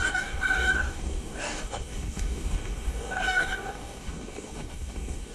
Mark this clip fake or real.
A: fake